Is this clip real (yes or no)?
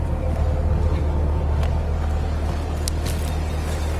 yes